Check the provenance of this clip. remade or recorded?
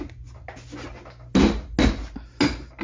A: recorded